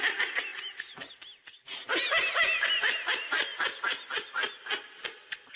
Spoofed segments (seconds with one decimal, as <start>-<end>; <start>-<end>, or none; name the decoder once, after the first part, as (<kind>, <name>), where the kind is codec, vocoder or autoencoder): 0.5-1.1 (vocoder, BigVGAN v2)